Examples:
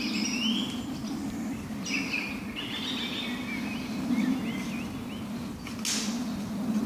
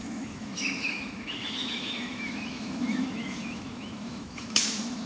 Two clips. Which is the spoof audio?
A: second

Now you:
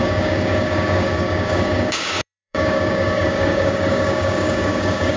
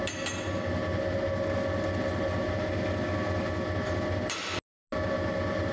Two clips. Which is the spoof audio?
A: first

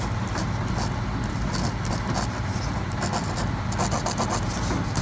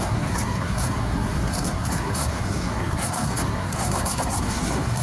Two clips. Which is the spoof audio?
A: second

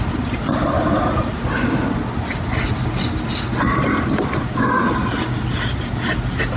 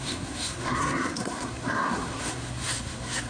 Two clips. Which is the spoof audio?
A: second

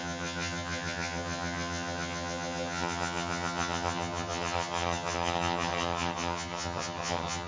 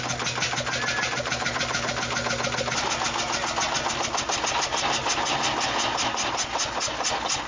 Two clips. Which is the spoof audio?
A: first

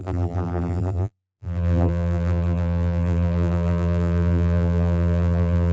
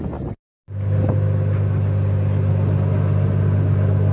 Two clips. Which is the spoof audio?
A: first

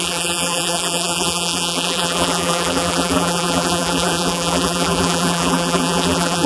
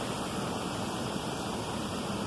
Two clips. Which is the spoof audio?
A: first